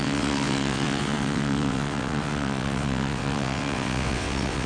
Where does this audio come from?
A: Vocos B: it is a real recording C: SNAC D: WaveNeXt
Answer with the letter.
D